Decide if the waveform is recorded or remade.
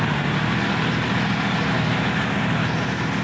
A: recorded